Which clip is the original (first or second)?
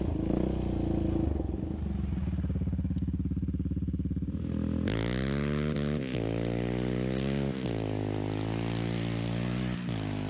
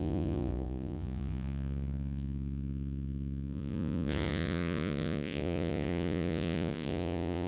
first